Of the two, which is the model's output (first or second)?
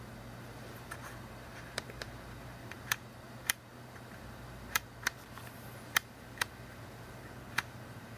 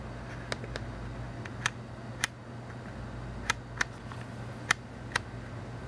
first